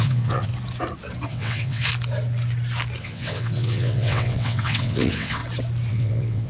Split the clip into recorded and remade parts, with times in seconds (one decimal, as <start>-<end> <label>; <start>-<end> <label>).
0.0-0.5 remade; 0.5-1.3 recorded; 1.3-1.9 remade; 1.9-3.0 recorded; 3.0-5.4 remade; 5.4-5.9 recorded; 5.9-6.5 remade